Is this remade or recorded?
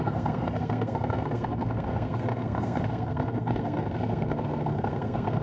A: remade